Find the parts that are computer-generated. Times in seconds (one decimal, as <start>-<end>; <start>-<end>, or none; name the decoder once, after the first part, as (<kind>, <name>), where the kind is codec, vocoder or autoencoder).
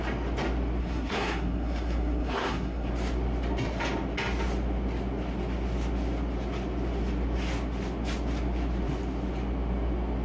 0.8-2.9 (codec, SNAC)